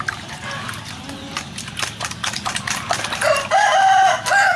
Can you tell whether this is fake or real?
real